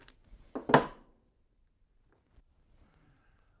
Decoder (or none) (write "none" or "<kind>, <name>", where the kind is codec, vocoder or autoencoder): none